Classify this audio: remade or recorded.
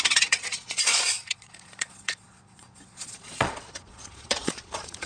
remade